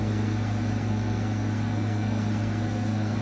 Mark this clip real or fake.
fake